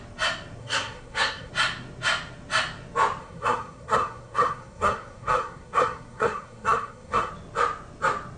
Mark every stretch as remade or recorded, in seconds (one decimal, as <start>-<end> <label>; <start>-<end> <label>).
0.0-0.6 recorded; 0.6-1.5 remade; 1.5-3.2 recorded; 3.2-7.3 remade; 7.3-8.4 recorded